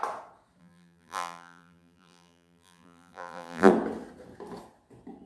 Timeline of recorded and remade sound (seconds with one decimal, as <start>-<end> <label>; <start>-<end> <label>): 0.0-0.6 recorded; 0.6-3.7 remade; 3.7-5.3 recorded